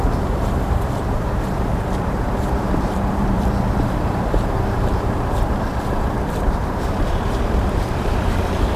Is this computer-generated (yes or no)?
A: yes